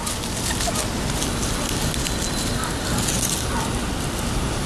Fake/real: real